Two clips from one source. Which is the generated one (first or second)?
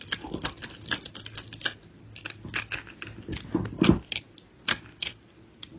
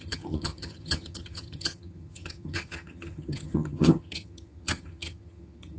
second